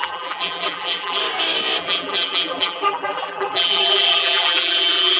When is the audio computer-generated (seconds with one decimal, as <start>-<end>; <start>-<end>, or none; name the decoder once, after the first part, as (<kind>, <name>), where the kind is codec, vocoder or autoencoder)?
0.0-1.2 (vocoder, BigVGAN v2); 1.8-5.2